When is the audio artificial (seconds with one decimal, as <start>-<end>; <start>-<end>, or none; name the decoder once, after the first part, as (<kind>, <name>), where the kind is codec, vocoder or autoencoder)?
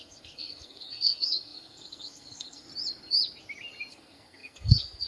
0.0-2.7 (codec, SNAC); 3.9-5.1